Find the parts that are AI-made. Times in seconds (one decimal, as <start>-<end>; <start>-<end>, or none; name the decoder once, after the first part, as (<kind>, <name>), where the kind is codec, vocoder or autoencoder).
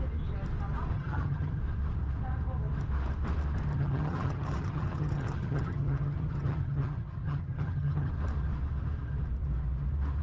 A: 0.9-1.6 (vocoder, HiFi-GAN); 3.7-8.1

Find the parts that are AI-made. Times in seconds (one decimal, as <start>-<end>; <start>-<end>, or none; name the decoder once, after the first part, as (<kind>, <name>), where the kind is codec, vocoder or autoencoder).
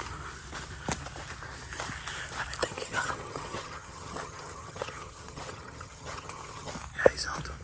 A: 2.6-6.7 (vocoder, HiFi-GAN)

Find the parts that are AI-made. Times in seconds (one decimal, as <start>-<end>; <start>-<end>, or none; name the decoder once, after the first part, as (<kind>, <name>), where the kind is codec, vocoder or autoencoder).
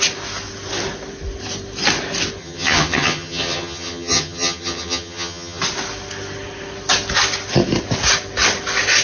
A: 2.4-5.6 (vocoder, HiFi-GAN)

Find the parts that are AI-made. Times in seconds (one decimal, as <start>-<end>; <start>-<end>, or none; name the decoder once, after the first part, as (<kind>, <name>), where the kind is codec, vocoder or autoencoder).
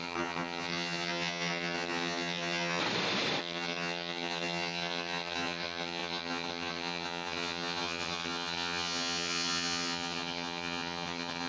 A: 0.0-2.8 (vocoder, HiFi-GAN); 3.4-11.5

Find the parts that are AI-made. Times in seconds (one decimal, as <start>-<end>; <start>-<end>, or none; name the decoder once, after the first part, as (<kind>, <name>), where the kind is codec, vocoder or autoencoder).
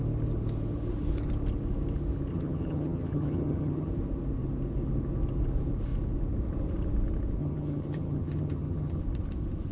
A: 2.3-3.9 (vocoder, HiFi-GAN); 7.4-9.0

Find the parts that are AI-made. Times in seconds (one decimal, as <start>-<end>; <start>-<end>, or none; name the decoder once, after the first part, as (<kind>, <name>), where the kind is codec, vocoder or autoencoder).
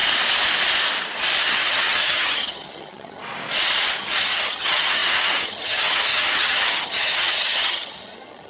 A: 1.4-3.2 (vocoder, HiFi-GAN); 4.0-8.5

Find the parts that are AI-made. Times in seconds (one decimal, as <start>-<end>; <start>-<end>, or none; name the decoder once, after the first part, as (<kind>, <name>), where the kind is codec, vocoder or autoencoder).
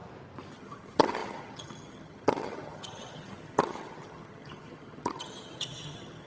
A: 0.5-6.3 (vocoder, HiFi-GAN)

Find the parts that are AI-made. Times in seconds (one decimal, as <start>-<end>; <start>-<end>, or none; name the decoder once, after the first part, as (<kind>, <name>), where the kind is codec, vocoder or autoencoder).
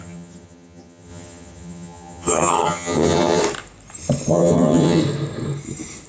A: 0.0-3.4 (vocoder, HiFi-GAN); 4.3-5.0